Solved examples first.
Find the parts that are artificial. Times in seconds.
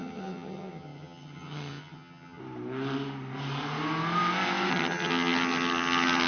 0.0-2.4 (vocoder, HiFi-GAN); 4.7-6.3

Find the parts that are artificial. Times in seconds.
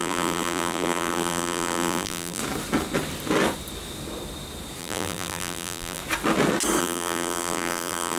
0.0-2.4 (vocoder, BigVGAN v2); 4.8-6.0; 6.8-8.2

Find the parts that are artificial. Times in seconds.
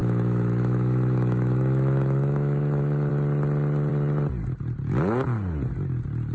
0.0-3.1 (autoencoder, DAC-VAE)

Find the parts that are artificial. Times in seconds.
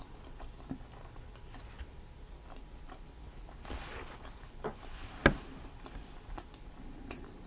none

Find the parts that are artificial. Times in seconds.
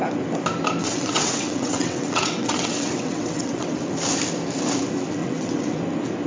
0.8-3.8 (vocoder, WaveNeXt); 5.2-5.8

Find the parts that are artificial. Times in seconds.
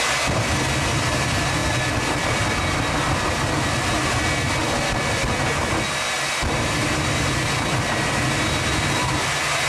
1.6-3.9 (vocoder, BigVGAN v2)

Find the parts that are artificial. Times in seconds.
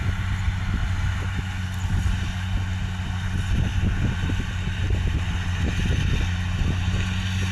none